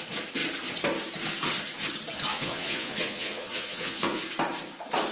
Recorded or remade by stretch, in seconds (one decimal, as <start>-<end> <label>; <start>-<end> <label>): 0.0-2.3 recorded; 2.3-4.2 remade; 4.2-5.1 recorded